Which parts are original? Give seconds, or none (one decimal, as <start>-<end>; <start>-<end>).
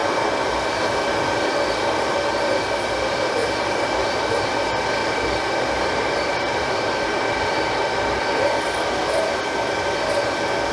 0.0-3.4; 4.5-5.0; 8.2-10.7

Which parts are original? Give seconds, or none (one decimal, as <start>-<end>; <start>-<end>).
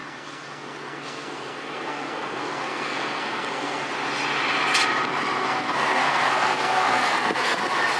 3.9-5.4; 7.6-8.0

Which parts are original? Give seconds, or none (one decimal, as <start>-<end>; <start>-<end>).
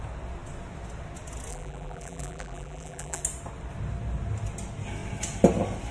0.0-1.5; 3.2-5.9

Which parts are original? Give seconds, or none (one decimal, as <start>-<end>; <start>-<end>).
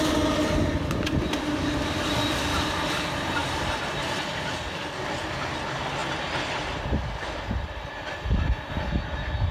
0.0-9.5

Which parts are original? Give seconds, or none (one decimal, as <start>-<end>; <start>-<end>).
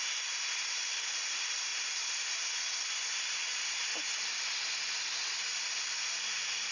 0.0-6.7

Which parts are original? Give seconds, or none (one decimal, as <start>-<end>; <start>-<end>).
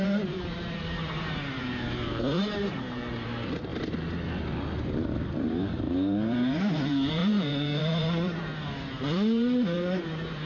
3.7-4.8; 8.5-9.0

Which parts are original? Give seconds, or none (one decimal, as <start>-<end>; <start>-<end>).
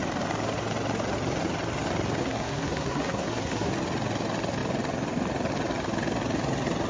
0.0-2.2; 3.7-6.9